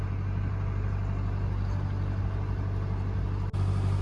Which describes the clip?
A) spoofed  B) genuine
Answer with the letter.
B